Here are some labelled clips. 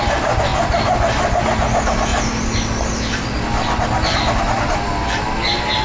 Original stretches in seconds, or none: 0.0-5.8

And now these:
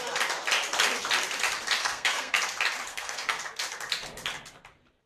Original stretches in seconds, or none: 0.0-1.8; 2.4-2.9; 3.4-5.1

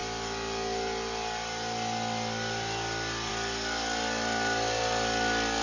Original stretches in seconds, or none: 0.0-5.6

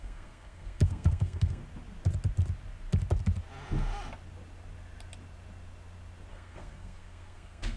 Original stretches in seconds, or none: 1.6-6.3

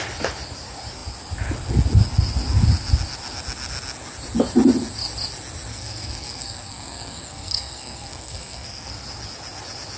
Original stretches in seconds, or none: 0.0-5.7; 8.9-10.0

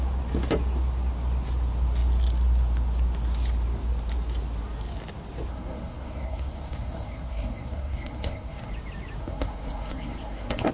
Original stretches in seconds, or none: 0.0-5.5; 8.7-9.2

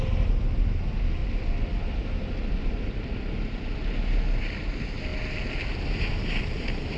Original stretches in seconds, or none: 0.0-7.0